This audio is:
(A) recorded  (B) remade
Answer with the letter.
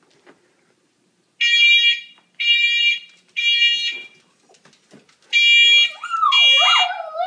A